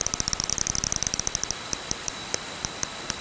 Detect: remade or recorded recorded